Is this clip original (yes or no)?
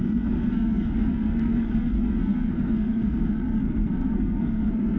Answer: no